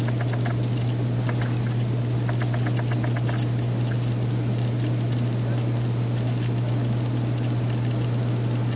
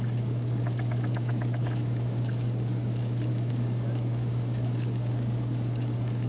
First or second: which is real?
first